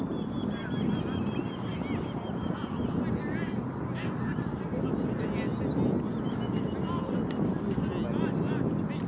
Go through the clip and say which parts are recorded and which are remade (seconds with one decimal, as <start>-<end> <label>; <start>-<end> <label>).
0.0-9.1 recorded